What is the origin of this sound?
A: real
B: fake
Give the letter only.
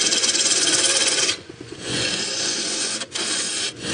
B